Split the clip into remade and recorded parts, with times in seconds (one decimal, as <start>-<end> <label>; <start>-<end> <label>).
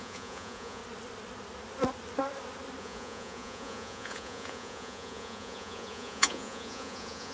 0.0-0.8 remade; 0.8-2.8 recorded; 2.8-7.3 remade